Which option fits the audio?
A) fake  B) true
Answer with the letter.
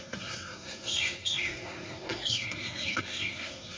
A